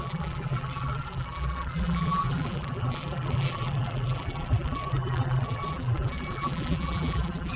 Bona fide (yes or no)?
no